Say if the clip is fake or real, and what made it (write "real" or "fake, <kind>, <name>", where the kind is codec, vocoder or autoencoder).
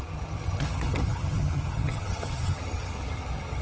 fake, vocoder, HiFi-GAN